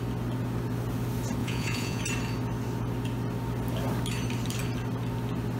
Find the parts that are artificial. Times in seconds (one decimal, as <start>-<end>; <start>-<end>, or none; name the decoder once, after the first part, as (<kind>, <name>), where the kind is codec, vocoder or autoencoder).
1.4-2.0 (vocoder, Vocos)